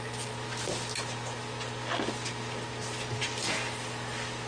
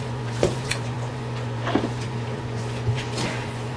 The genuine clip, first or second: first